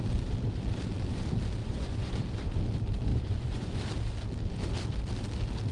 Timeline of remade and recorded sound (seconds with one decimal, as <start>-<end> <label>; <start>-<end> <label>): 0.0-1.6 recorded; 1.6-2.1 remade; 2.1-3.1 recorded; 3.1-3.8 remade; 3.8-5.7 recorded